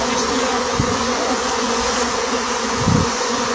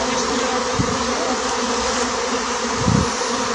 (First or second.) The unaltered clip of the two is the second